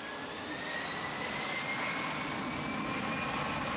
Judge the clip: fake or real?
real